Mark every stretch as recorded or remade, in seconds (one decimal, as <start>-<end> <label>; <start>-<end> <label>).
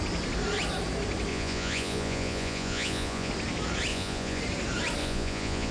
0.0-1.3 recorded; 1.3-3.3 remade; 3.3-3.9 recorded; 3.9-4.4 remade; 4.4-5.0 recorded; 5.0-5.7 remade